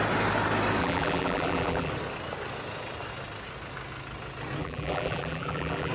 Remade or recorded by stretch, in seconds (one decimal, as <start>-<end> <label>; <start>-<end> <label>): 0.0-0.8 recorded; 0.8-1.9 remade; 1.9-4.6 recorded; 4.6-5.9 remade